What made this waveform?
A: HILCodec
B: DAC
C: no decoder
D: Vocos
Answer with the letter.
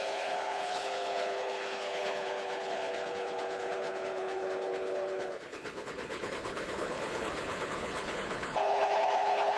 A